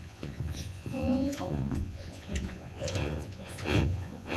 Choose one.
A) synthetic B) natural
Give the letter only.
A